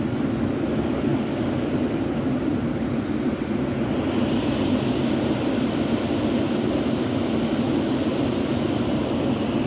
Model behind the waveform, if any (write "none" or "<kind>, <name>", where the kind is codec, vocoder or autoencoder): none